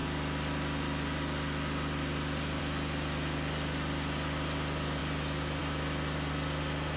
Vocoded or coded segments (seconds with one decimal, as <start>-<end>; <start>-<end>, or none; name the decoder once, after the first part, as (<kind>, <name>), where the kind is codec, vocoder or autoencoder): none